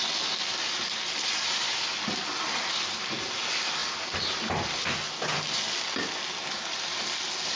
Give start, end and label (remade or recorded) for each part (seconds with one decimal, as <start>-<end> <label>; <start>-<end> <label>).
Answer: 0.0-7.6 recorded